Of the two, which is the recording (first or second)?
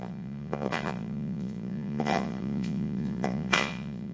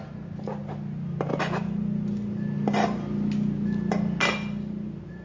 second